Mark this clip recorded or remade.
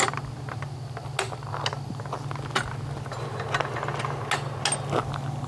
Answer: recorded